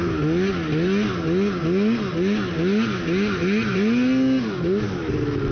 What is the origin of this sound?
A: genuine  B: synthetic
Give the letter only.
A